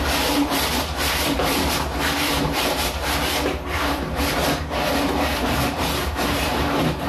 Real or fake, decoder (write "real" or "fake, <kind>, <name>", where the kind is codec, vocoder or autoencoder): fake, vocoder, BigVGAN v2